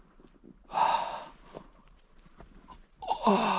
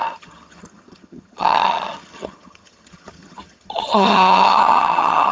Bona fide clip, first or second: first